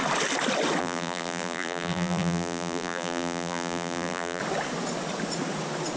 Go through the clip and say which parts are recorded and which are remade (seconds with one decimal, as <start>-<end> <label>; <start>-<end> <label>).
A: 0.0-0.8 recorded; 0.8-4.4 remade; 4.4-6.0 recorded